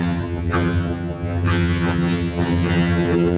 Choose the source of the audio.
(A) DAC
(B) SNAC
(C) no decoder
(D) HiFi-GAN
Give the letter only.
D